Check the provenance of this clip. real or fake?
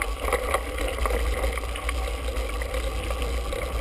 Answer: real